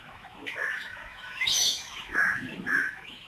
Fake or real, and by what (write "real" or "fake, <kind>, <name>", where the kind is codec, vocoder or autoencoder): fake, autoencoder, DAC-VAE